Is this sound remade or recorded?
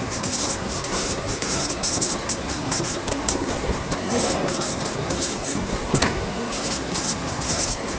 remade